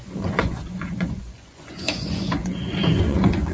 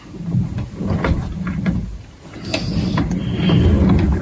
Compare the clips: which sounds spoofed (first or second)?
first